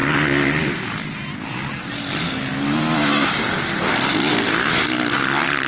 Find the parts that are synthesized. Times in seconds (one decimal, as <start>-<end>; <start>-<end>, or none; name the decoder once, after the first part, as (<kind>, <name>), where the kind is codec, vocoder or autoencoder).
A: none